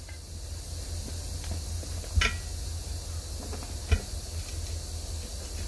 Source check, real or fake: real